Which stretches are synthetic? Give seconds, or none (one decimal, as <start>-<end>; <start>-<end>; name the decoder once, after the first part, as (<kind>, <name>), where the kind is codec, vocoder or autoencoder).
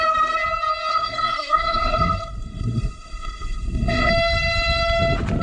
0.9-4.1 (codec, SNAC)